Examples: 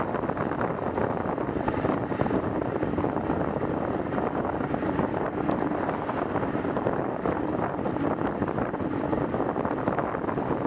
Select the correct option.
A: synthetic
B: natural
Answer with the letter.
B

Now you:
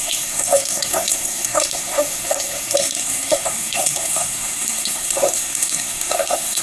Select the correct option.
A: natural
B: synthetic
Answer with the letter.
B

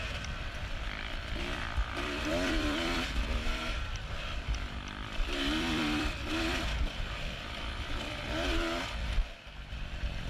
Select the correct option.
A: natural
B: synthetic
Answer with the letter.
B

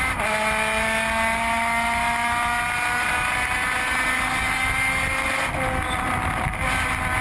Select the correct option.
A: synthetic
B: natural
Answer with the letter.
B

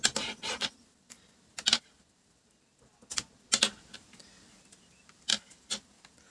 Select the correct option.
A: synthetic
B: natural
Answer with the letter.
B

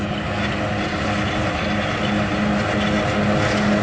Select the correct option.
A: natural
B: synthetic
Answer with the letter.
A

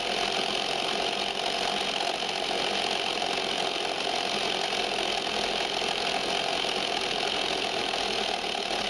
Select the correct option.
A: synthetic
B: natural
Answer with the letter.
B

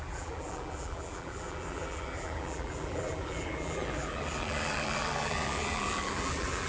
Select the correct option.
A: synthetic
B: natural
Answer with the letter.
A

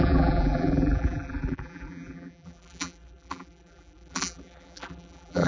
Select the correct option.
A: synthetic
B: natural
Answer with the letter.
A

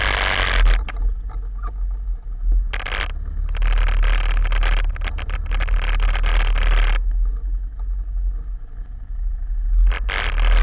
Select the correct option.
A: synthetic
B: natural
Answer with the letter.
B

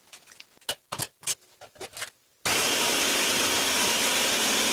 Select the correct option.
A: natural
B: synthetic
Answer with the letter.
A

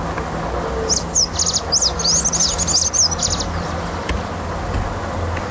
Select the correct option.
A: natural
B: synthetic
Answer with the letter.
A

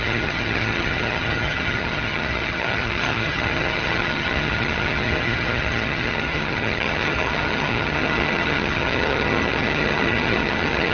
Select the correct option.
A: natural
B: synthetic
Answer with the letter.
B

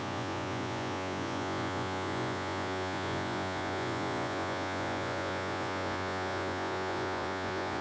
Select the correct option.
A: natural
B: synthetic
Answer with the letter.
B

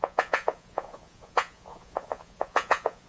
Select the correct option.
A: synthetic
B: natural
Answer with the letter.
A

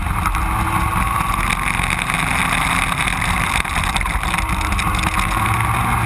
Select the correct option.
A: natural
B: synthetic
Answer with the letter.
A